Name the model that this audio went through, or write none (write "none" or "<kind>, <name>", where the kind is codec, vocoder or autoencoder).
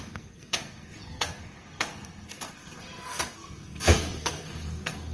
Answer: codec, SNAC